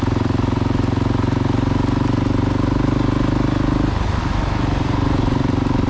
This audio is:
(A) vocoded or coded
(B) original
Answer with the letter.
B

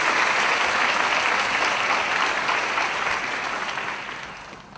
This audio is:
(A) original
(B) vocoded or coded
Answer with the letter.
A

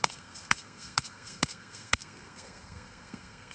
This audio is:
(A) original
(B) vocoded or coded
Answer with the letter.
B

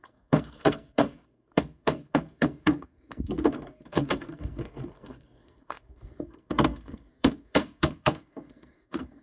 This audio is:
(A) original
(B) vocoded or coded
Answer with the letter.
B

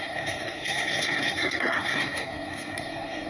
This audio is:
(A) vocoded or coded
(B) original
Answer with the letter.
A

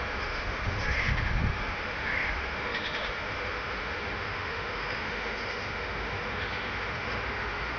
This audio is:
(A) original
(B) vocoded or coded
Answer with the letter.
B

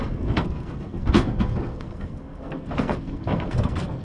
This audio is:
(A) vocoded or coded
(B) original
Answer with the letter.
A